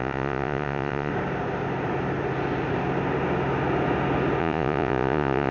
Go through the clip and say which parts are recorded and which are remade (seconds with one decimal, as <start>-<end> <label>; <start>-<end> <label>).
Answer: 0.0-1.1 remade; 1.1-4.4 recorded; 4.4-5.5 remade